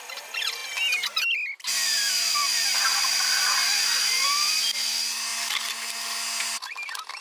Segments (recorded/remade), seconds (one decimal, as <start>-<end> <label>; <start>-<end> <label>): 0.0-7.2 recorded